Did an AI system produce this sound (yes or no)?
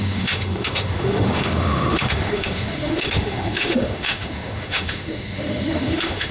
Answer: yes